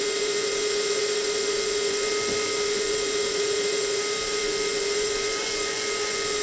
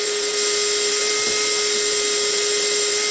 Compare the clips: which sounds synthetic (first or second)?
first